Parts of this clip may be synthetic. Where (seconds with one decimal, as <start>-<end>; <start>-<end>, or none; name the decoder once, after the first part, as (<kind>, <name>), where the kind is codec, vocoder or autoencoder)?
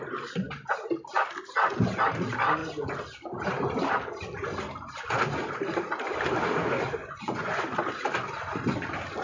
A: 7.0-7.6 (vocoder, Vocos)